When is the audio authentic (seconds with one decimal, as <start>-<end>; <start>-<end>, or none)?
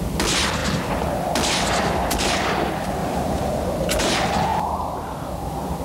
0.0-3.0; 3.5-4.5; 5.2-5.8